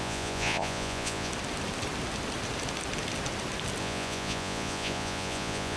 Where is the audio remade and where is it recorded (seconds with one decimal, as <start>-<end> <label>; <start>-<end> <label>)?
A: 0.0-1.3 remade; 1.3-3.8 recorded; 3.8-5.8 remade